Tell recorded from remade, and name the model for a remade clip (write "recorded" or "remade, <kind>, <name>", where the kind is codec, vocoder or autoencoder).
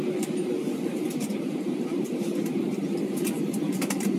remade, vocoder, BigVGAN v2